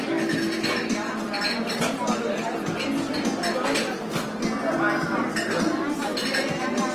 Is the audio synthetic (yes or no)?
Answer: no